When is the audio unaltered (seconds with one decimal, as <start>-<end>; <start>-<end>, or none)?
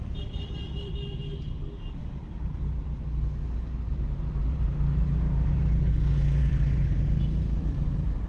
0.0-2.0; 3.0-3.9; 5.6-6.4